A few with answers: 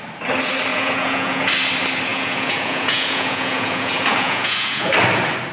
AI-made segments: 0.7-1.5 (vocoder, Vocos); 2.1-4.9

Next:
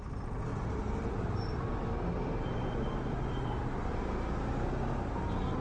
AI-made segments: none

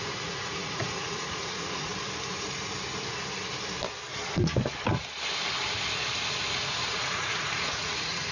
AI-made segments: 0.0-1.9 (vocoder, Vocos); 6.9-8.3

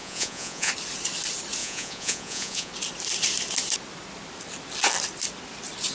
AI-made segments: 0.0-0.7 (vocoder, Vocos); 1.6-2.7

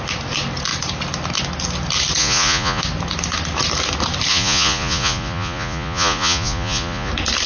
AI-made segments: 2.2-2.8 (vocoder, Vocos); 4.3-7.1

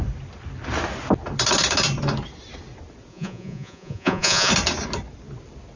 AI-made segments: 3.1-4.5 (vocoder, Vocos)

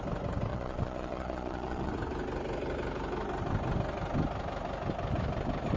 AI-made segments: 0.5-1.9 (vocoder, Vocos)